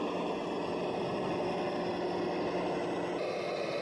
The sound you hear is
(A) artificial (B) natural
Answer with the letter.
B